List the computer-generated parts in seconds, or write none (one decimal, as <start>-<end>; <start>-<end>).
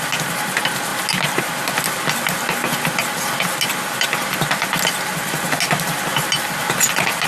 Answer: none